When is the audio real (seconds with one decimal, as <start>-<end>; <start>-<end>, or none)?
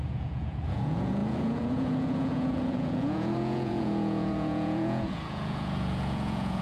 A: none